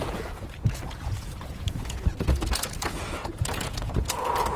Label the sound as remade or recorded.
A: remade